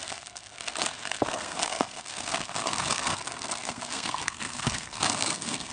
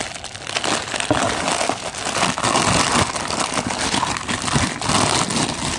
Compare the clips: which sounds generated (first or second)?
first